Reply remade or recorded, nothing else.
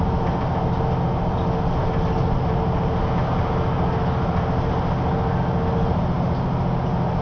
recorded